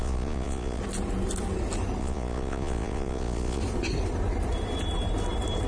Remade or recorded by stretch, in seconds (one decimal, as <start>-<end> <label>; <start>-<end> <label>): 0.0-0.8 remade; 0.8-2.0 recorded; 2.0-3.6 remade; 3.6-5.7 recorded